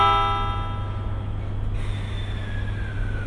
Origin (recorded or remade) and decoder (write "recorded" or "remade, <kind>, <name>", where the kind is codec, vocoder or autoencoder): recorded